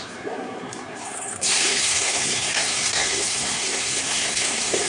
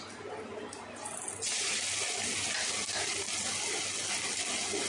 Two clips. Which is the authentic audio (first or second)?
second